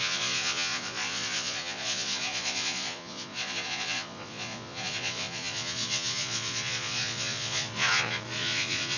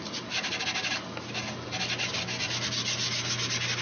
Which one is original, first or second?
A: second